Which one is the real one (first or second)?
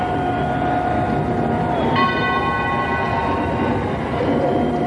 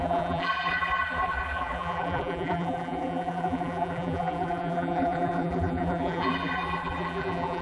first